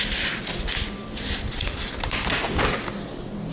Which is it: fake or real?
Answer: real